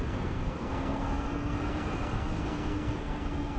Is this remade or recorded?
remade